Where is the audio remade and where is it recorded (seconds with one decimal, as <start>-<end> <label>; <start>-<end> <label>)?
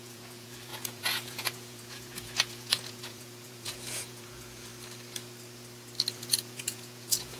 0.0-4.7 remade; 4.7-6.1 recorded; 6.1-7.4 remade